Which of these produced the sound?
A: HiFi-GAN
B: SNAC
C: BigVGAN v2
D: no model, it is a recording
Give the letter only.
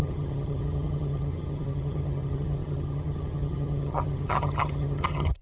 A